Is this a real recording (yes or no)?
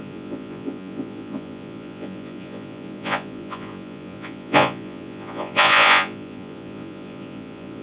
no